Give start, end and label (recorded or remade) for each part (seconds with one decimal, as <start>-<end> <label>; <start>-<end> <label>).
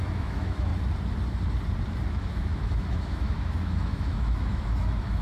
0.0-0.7 remade; 0.7-2.1 recorded; 2.1-5.2 remade